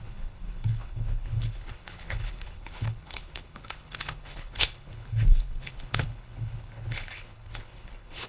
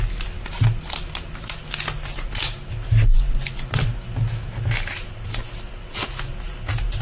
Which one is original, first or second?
second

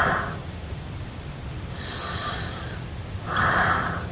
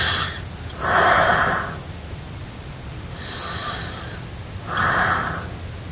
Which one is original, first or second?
second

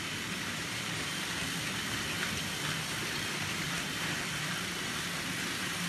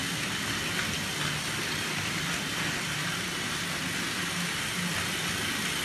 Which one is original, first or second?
second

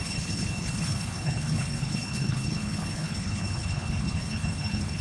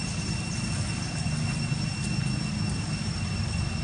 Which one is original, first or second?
second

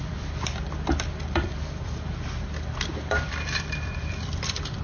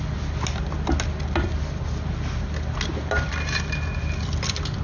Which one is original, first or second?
second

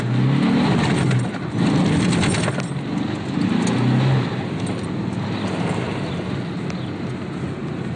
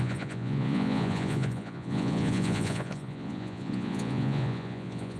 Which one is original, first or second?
first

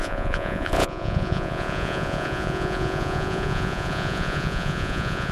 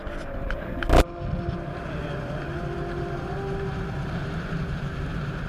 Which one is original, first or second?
second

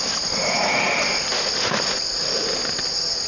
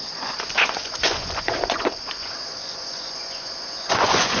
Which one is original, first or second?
first